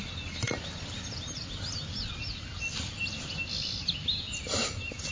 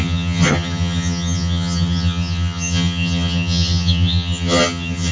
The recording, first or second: first